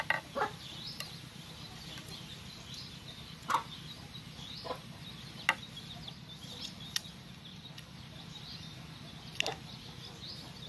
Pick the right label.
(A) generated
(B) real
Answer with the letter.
B